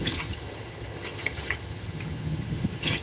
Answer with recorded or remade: remade